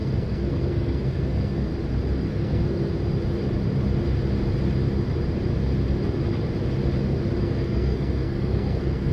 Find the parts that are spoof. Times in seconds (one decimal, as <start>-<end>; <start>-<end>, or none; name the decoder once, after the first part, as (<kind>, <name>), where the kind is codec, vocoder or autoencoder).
0.0-1.7 (codec, SNAC); 2.3-2.9; 7.4-9.1